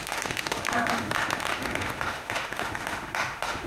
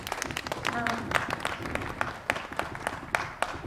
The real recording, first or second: second